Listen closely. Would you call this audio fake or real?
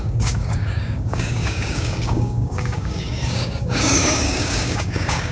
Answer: fake